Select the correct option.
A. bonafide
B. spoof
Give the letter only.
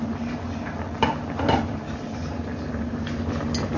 A